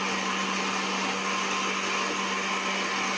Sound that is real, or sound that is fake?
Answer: real